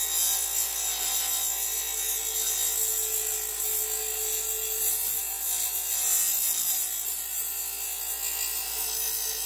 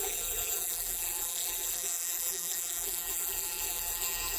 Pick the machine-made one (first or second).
second